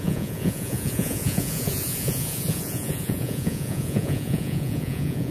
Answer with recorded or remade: remade